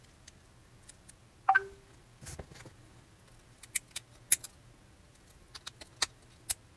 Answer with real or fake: real